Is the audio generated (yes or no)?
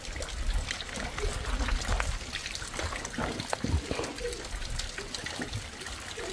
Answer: no